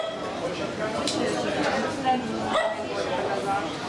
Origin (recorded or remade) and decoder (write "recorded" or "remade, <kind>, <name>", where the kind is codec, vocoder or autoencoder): recorded